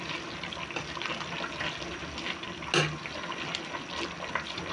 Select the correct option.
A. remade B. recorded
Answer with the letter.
B